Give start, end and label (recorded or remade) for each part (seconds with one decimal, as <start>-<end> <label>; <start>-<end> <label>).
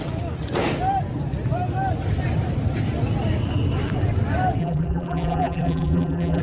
0.0-4.6 recorded; 4.6-6.4 remade